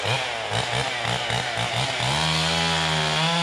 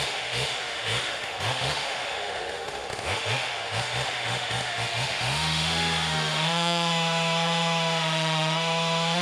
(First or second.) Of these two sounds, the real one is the first